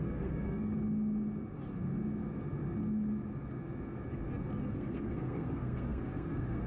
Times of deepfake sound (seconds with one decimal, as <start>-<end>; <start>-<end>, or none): 0.0-0.7; 4.7-6.7